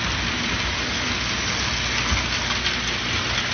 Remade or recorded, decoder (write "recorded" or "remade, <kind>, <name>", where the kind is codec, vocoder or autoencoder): recorded